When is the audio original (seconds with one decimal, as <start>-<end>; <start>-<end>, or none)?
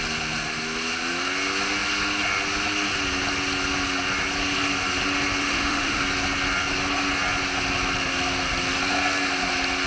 0.0-5.4; 6.0-9.9